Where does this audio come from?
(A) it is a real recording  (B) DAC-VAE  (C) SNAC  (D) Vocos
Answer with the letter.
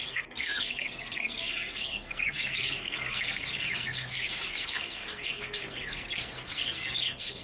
C